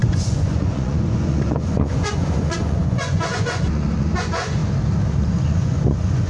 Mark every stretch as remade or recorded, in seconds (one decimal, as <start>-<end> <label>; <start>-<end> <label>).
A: 0.0-4.6 remade; 4.6-5.2 recorded; 5.2-6.3 remade